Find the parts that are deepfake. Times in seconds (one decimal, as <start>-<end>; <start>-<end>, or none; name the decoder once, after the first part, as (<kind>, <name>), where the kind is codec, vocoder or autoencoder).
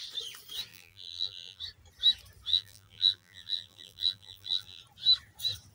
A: 0.7-1.6 (vocoder, BigVGAN v2); 2.5-4.8